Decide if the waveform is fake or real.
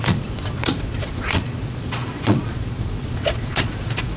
fake